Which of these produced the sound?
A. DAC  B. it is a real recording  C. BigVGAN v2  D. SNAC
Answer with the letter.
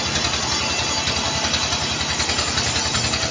B